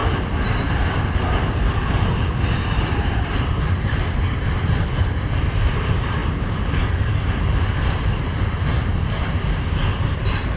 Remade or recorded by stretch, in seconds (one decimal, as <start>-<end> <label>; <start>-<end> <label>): 0.0-0.8 recorded; 0.8-6.2 remade; 6.2-7.0 recorded; 7.0-8.9 remade; 8.9-10.2 recorded; 10.2-10.6 remade